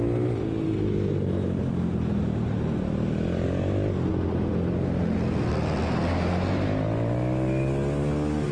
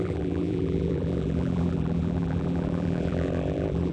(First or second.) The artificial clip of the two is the second